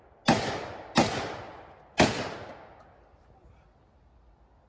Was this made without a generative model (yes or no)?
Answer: yes